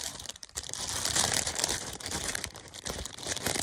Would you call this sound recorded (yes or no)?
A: no